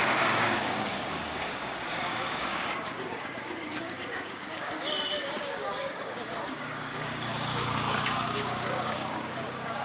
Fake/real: fake